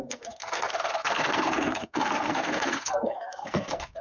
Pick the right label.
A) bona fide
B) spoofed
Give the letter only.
B